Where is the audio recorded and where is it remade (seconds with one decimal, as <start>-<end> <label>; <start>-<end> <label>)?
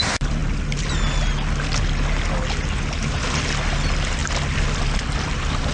0.0-0.4 remade; 0.4-3.8 recorded; 3.8-4.2 remade; 4.2-5.0 recorded; 5.0-5.7 remade